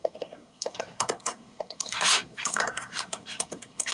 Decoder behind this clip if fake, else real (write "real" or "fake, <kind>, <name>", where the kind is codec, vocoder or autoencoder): fake, codec, SNAC